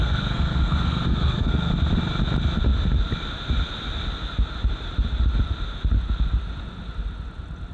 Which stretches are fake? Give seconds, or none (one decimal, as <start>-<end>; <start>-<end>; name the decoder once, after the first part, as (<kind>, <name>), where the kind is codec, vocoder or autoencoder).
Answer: 0.0-1.7 (codec, SNAC)